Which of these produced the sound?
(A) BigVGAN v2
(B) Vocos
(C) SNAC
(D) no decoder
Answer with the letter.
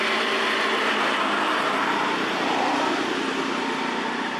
D